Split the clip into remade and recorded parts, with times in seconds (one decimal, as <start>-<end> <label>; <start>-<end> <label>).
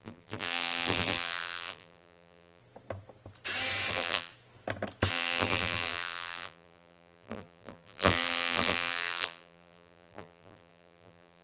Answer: 0.0-2.6 remade; 2.6-3.9 recorded; 3.9-4.3 remade; 4.3-5.1 recorded; 5.1-11.4 remade